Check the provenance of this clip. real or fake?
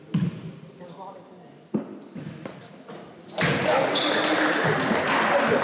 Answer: real